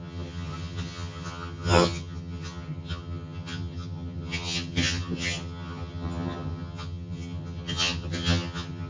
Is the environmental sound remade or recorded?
remade